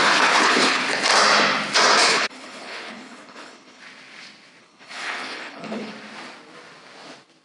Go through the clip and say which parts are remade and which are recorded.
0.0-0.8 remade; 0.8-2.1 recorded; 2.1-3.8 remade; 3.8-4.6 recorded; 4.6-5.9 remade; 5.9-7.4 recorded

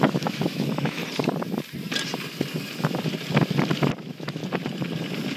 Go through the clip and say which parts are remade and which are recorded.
0.0-1.0 remade; 1.0-4.0 recorded; 4.0-4.4 remade; 4.4-5.4 recorded

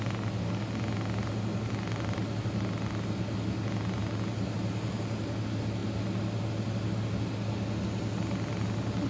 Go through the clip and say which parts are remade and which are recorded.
0.0-9.1 recorded

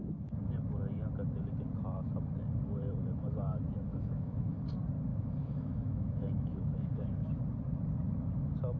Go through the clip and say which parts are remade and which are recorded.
0.0-3.9 recorded; 3.9-4.6 remade; 4.6-5.1 recorded; 5.1-7.4 remade; 7.4-8.8 recorded

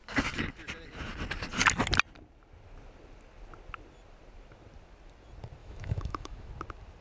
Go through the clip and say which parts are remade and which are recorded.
0.0-5.6 recorded; 5.6-6.5 remade; 6.5-7.0 recorded

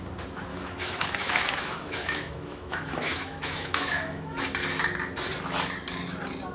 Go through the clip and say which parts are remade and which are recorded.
0.0-0.5 recorded; 0.5-4.4 remade; 4.4-6.5 recorded